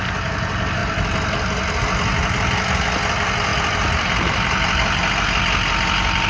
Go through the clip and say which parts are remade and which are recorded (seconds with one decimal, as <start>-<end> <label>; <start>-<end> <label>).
0.0-6.3 recorded